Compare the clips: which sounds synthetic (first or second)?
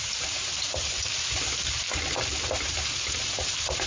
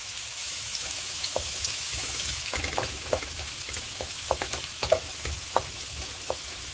second